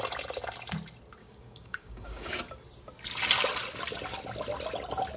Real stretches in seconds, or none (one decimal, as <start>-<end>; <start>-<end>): 0.0-1.2; 2.3-5.2